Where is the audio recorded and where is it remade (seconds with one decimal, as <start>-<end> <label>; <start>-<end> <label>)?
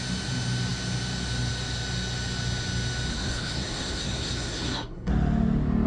0.0-3.1 recorded; 3.1-5.1 remade; 5.1-5.9 recorded